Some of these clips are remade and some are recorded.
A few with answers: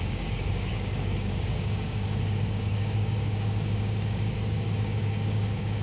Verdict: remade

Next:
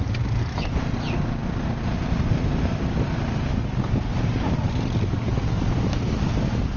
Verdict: recorded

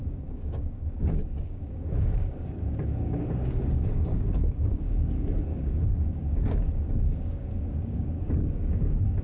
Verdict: remade